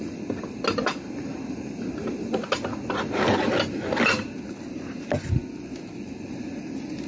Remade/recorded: recorded